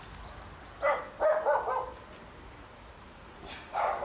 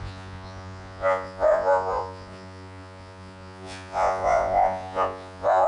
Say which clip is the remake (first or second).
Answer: second